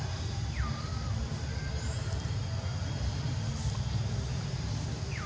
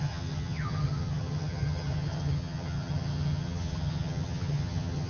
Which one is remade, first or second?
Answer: second